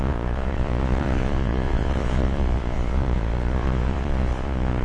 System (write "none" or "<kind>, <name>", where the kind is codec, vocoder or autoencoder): vocoder, Vocos